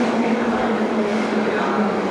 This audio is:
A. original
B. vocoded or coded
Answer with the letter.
B